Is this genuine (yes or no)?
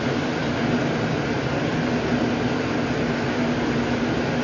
yes